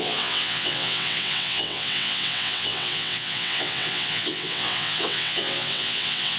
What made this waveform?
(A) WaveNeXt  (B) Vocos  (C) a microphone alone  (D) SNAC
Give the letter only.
A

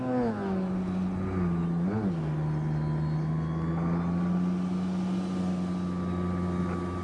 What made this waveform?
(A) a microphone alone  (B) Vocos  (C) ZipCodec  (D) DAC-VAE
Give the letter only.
A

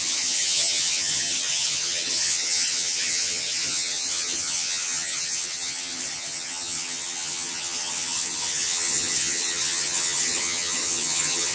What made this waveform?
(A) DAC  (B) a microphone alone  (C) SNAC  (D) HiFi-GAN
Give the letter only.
D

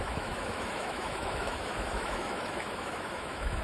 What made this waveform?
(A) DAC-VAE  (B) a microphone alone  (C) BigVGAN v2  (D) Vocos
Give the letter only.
A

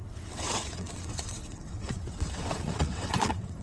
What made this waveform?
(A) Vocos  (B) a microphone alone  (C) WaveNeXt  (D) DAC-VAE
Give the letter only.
C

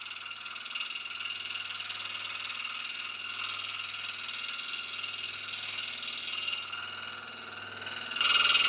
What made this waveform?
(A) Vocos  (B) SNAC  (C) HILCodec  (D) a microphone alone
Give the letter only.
D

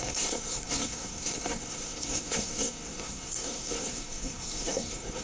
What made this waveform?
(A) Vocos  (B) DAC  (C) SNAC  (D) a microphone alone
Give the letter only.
C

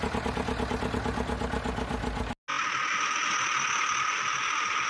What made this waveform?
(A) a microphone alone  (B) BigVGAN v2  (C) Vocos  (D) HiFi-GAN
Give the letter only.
A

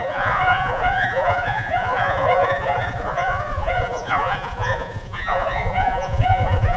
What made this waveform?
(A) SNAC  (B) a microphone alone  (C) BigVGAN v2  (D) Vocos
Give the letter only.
D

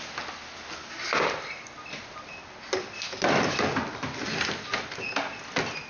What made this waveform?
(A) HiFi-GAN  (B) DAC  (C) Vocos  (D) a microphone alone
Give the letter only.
D